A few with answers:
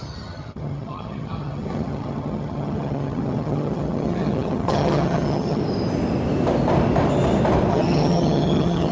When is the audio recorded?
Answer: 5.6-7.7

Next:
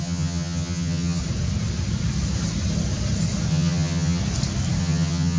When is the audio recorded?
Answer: 1.2-3.5; 4.2-4.8